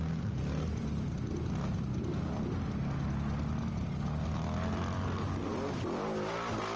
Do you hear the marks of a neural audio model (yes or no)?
no